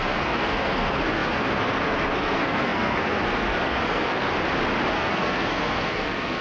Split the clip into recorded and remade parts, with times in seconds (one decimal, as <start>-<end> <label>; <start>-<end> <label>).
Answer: 0.0-4.3 remade; 4.3-4.9 recorded; 4.9-6.4 remade

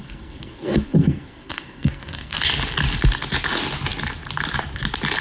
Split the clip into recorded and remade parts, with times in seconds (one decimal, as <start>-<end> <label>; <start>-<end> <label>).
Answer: 0.0-2.4 remade; 2.4-5.2 recorded

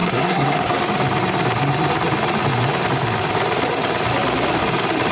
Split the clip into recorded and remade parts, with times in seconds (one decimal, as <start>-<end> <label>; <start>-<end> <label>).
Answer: 0.0-0.8 remade; 0.8-5.1 recorded

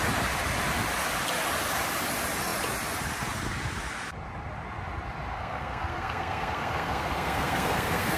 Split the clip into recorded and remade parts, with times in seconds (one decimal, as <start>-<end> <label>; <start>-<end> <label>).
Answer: 0.0-5.3 recorded; 5.3-8.2 remade

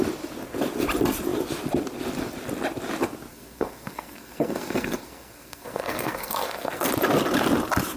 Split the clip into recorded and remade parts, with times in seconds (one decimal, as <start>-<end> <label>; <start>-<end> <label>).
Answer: 0.0-3.3 recorded; 3.3-6.9 remade; 6.9-8.0 recorded

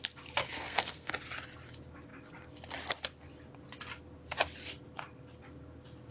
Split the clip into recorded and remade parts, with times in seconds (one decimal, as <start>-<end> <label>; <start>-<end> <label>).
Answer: 0.0-0.4 recorded; 0.4-1.1 remade; 1.1-6.1 recorded

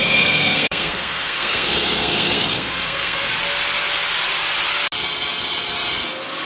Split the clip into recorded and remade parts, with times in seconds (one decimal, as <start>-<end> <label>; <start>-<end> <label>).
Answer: 0.0-3.3 remade; 3.3-6.4 recorded